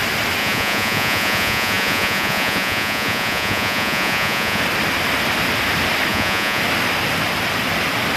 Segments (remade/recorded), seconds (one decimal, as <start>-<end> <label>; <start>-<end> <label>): 0.0-0.4 recorded; 0.4-4.6 remade; 4.6-6.1 recorded; 6.1-6.6 remade; 6.6-8.2 recorded